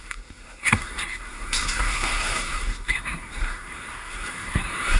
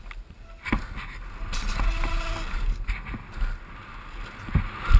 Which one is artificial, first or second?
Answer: first